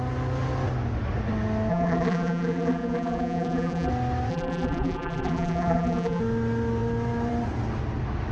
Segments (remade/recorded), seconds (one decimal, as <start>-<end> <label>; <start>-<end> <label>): 0.0-1.7 recorded; 1.7-3.9 remade; 3.9-4.3 recorded; 4.3-6.2 remade; 6.2-8.3 recorded